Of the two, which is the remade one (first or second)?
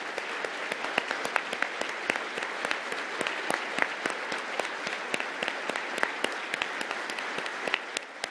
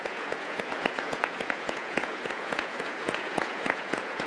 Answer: second